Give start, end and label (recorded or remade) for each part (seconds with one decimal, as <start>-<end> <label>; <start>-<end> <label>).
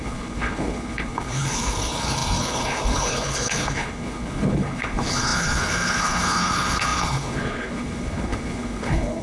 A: 0.0-9.2 remade